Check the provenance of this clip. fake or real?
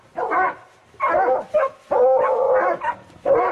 real